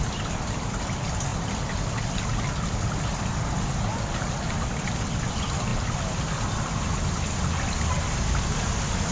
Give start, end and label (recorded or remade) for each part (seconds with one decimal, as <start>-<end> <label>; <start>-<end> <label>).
0.0-9.1 recorded